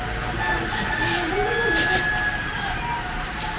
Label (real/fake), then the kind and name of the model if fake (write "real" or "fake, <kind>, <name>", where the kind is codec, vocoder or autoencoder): real